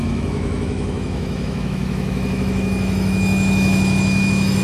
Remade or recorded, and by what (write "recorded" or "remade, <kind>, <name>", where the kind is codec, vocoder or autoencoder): remade, autoencoder, DAC-VAE